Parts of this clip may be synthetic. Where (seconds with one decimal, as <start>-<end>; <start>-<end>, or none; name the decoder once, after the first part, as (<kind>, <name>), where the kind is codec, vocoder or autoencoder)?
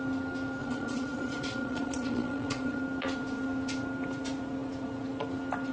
0.6-2.8 (vocoder, Vocos)